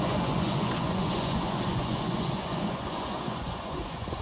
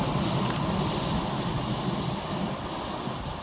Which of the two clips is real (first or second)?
second